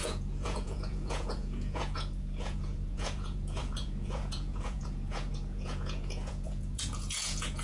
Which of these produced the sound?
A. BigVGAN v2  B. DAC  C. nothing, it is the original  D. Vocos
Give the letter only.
D